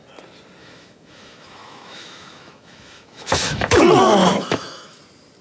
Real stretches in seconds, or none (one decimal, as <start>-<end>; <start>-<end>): 0.0-0.6; 3.8-4.2; 5.0-5.4